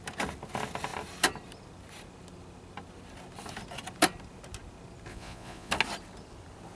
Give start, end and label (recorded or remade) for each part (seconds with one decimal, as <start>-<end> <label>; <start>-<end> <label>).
0.0-5.1 recorded; 5.1-5.7 remade; 5.7-6.8 recorded